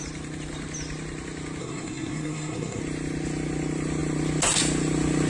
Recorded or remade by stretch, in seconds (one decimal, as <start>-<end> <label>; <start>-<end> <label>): 0.0-1.6 recorded; 1.6-2.8 remade; 2.8-5.3 recorded